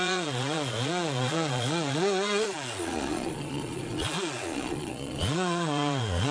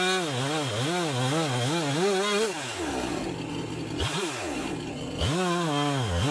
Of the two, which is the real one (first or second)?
second